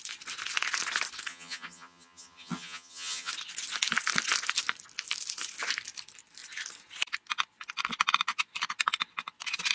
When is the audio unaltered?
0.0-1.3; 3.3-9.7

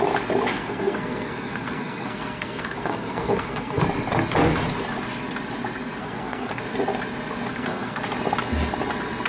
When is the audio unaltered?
0.0-0.5; 3.8-6.0; 6.6-7.5; 8.0-9.3

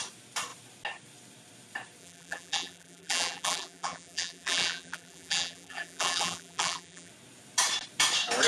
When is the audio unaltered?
0.0-2.0; 7.1-8.5

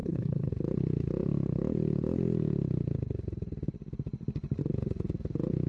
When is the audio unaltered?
0.5-5.7

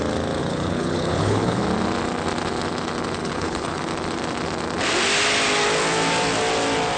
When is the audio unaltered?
0.0-0.4; 1.6-3.2; 3.8-7.0

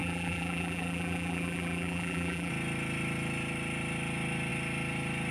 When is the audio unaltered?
2.5-5.3

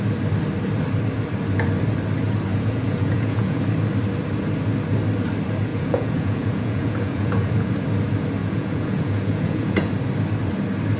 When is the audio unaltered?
0.0-2.5; 3.6-5.7; 7.7-8.4; 9.9-11.0